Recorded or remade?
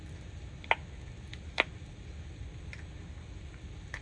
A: recorded